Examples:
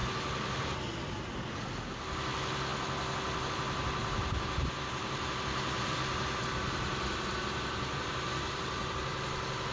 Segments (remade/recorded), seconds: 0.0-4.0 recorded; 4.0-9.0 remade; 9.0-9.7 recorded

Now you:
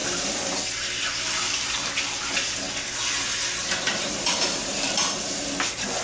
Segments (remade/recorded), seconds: 0.0-0.6 remade; 0.6-3.9 recorded; 3.9-5.4 remade; 5.4-6.0 recorded